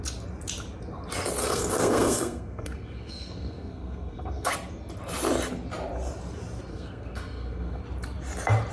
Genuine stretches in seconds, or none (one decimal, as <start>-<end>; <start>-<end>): 0.0-1.4; 4.5-6.7; 7.8-8.7